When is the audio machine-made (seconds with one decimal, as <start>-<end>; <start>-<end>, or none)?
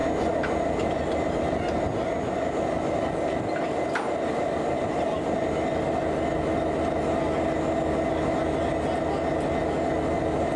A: none